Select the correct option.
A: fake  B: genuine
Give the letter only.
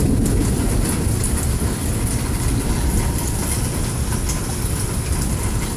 B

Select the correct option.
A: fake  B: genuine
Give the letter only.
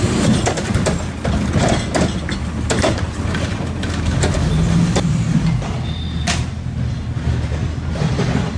B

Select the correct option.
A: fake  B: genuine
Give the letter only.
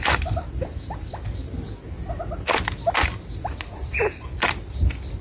B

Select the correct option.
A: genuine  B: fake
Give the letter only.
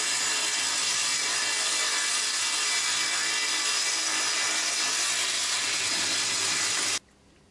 A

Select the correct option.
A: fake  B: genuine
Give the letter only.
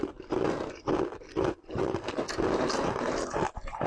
B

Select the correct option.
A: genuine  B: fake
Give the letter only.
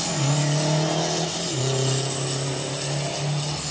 A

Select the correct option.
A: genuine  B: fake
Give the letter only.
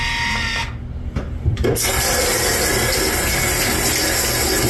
A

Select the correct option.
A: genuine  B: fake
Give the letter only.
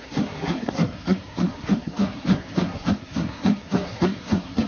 B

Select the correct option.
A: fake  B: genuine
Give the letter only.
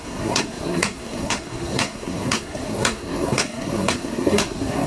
A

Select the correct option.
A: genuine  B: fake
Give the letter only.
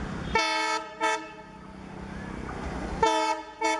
A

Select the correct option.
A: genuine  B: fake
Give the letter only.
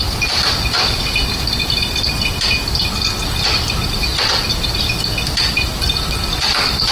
A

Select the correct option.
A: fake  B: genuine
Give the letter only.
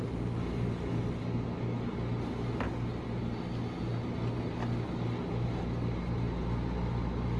B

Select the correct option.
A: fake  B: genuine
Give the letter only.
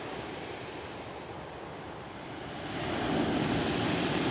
B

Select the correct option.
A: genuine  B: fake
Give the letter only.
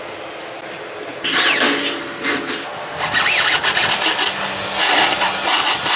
A